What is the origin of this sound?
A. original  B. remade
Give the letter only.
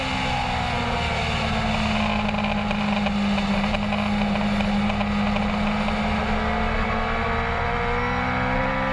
A